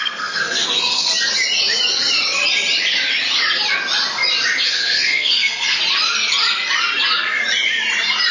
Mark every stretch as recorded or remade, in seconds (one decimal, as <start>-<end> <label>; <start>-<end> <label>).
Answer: 0.0-1.1 remade; 1.1-4.7 recorded; 4.7-5.8 remade; 5.8-8.3 recorded